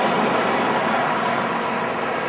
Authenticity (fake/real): real